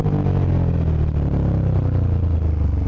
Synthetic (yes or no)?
no